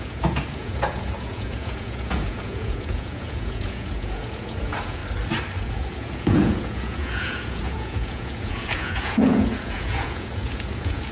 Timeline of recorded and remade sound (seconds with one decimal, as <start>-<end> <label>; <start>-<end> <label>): 0.0-5.0 remade; 5.0-5.6 recorded; 5.6-11.1 remade